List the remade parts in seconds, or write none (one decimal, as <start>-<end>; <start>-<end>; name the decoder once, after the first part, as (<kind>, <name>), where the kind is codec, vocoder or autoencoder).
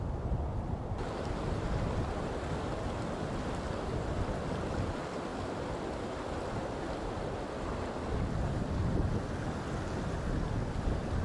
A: none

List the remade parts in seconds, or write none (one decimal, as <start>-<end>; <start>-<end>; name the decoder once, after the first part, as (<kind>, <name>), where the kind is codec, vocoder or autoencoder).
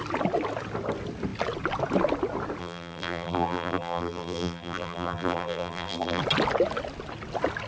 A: 2.6-6.2 (vocoder, BigVGAN v2)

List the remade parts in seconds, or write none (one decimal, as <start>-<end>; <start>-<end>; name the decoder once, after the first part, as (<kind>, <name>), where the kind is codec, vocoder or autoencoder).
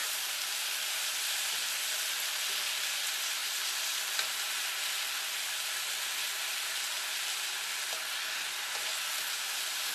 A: 0.0-1.7 (vocoder, BigVGAN v2)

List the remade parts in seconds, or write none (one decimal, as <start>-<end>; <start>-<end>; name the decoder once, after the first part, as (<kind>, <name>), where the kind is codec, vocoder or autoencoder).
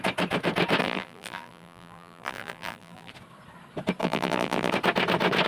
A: 0.8-3.1 (vocoder, BigVGAN v2); 4.0-4.7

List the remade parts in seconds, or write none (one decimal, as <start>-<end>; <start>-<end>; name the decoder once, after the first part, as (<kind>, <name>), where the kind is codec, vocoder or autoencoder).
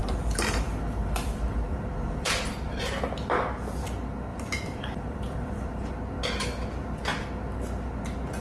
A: 0.0-2.3 (vocoder, BigVGAN v2); 4.3-5.9